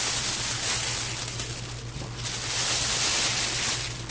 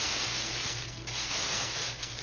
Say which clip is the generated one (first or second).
second